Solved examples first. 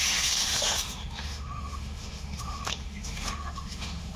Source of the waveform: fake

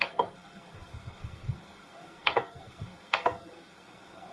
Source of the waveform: fake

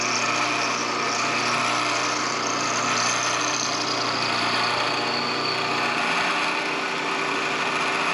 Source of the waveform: real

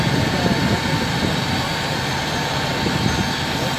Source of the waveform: real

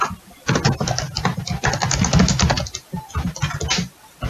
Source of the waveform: real